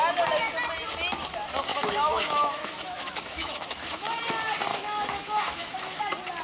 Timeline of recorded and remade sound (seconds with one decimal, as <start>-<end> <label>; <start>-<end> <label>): 0.0-1.7 recorded; 1.7-4.2 remade; 4.2-4.7 recorded; 4.7-6.0 remade; 6.0-6.4 recorded